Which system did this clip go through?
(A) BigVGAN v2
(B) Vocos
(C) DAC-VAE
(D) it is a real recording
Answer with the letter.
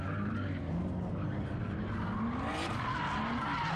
D